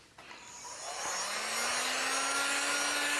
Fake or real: real